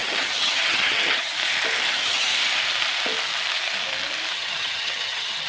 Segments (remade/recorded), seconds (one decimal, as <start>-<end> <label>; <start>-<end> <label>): 0.0-1.3 remade; 1.3-1.9 recorded; 1.9-2.3 remade; 2.3-4.3 recorded; 4.3-5.5 remade